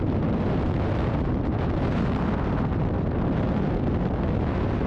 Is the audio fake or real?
real